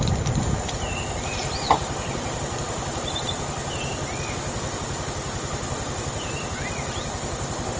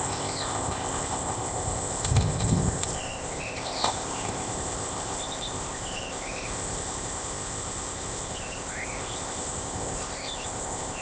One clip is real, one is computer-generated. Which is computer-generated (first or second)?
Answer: second